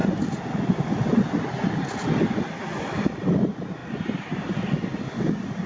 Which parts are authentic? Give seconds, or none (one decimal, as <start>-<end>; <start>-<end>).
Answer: 0.0-5.7